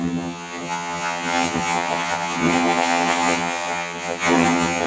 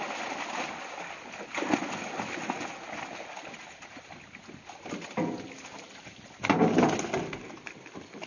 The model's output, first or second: first